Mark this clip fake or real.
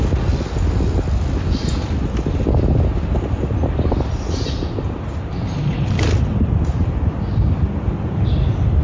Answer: real